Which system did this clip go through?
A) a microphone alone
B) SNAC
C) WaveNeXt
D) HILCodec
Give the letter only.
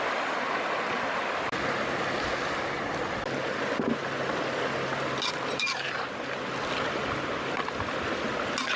A